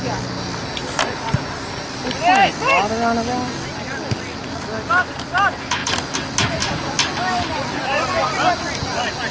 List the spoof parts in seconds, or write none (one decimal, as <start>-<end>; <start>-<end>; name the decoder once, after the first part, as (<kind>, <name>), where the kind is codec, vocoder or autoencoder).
none